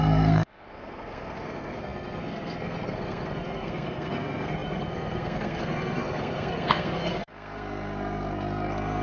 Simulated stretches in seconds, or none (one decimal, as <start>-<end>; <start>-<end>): 0.0-9.0